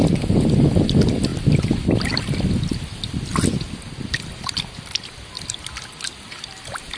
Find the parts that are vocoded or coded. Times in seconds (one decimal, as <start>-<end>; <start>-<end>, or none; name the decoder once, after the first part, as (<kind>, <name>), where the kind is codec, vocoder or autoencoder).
none